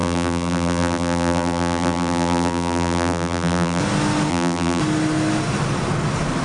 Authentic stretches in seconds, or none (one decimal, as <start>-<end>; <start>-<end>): 3.8-4.3; 4.8-6.4